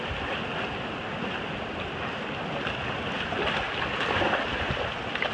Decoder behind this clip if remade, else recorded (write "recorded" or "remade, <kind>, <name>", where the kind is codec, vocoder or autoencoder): recorded